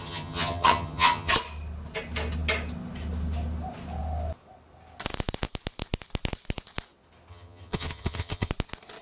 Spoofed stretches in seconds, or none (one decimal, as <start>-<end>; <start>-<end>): 0.0-1.3; 7.3-8.5